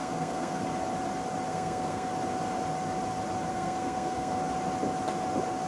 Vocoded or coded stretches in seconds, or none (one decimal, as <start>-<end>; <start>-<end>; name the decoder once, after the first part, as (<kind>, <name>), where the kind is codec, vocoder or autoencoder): 0.0-0.6 (codec, SNAC); 1.5-2.1; 3.5-4.4